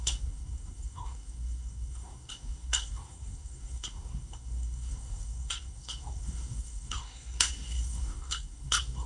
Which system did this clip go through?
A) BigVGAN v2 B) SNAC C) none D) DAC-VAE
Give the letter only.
B